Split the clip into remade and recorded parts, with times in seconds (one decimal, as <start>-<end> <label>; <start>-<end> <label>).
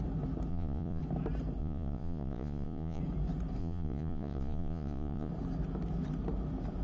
0.0-0.5 recorded; 0.5-1.0 remade; 1.0-1.6 recorded; 1.6-3.0 remade; 3.0-3.6 recorded; 3.6-5.3 remade; 5.3-6.8 recorded